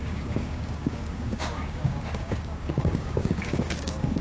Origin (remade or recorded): remade